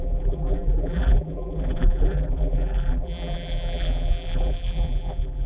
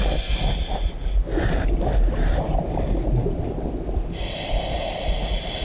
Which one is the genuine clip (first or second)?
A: second